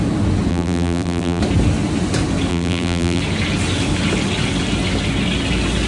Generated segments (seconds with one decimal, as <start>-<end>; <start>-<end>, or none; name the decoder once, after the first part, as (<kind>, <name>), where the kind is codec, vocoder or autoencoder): 0.5-1.4 (vocoder, BigVGAN v2); 2.5-3.2